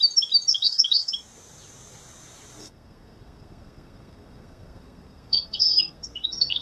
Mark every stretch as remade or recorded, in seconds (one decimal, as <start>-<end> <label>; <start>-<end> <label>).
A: 0.0-0.5 recorded; 0.5-1.1 remade; 1.1-2.6 recorded; 2.6-6.6 remade